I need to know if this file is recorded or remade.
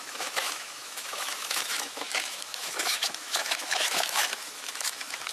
remade